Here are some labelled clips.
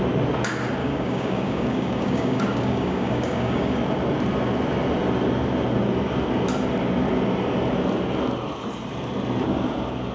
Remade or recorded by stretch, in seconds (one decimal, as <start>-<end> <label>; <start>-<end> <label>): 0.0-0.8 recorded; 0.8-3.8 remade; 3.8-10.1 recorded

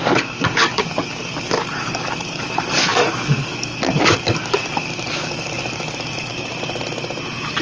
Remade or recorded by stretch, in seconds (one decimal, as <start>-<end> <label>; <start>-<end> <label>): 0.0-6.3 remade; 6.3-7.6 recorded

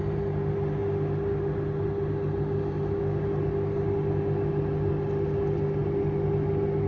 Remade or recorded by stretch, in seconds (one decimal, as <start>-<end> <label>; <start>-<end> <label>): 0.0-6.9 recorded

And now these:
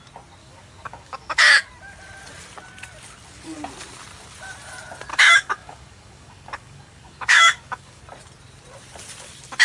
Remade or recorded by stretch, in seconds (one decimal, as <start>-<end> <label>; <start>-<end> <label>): 0.0-0.4 recorded; 0.4-1.7 remade; 1.7-5.1 recorded; 5.1-8.0 remade; 8.0-9.6 recorded